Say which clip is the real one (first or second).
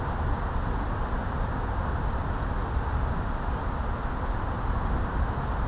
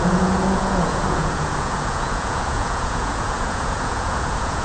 first